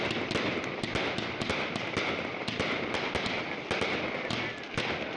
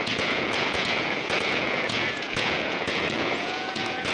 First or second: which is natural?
first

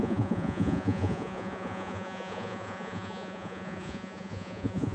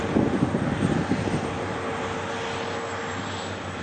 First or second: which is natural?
second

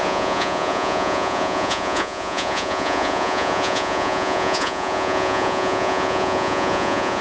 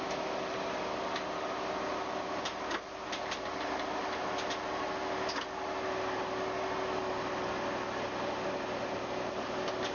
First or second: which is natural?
second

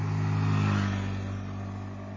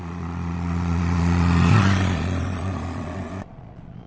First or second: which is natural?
first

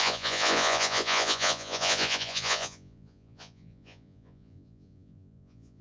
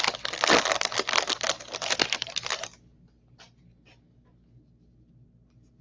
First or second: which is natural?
second